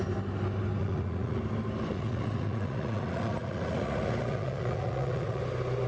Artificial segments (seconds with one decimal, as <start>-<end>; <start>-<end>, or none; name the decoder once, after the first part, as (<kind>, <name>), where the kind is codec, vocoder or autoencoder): 0.8-1.4 (vocoder, Vocos); 1.9-5.4